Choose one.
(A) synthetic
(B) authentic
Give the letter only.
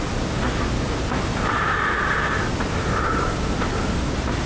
B